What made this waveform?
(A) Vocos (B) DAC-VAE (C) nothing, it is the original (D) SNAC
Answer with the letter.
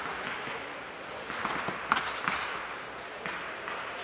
C